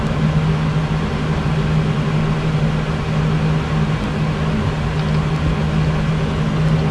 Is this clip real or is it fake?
real